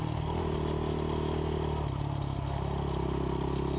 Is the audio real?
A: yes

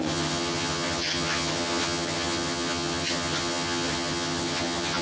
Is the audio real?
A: no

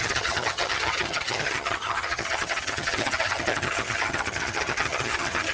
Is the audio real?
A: no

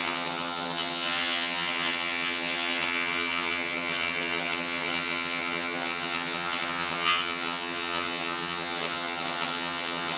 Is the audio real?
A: no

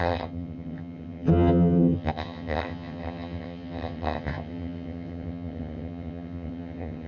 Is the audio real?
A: no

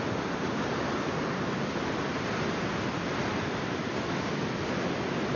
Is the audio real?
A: yes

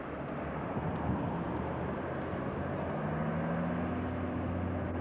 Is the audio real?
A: yes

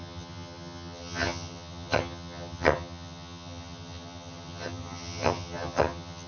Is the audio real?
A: no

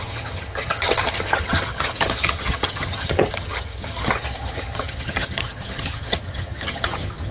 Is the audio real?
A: no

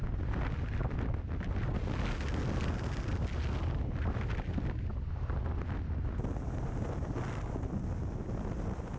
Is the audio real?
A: yes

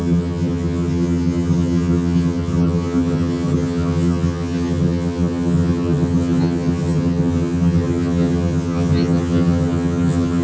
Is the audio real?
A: no